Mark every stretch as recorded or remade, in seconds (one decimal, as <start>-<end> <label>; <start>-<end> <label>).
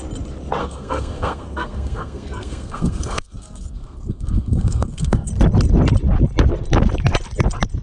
0.0-0.6 recorded; 0.6-5.3 remade; 5.3-7.8 recorded